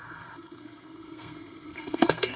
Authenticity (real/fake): fake